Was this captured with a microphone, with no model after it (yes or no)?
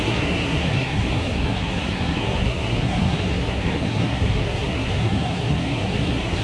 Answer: no